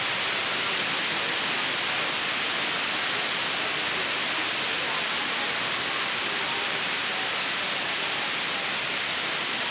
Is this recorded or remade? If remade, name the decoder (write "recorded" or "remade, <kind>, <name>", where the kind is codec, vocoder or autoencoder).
recorded